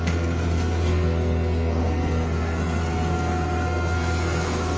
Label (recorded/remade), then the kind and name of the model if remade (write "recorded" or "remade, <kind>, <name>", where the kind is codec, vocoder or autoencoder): remade, codec, SNAC